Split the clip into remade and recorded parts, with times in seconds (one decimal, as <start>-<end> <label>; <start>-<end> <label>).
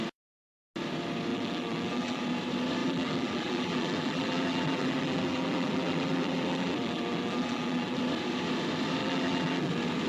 0.0-1.3 recorded; 1.3-2.2 remade; 2.2-2.8 recorded; 2.8-8.0 remade; 8.0-9.0 recorded; 9.0-9.7 remade; 9.7-10.1 recorded